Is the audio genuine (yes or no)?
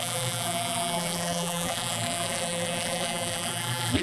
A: no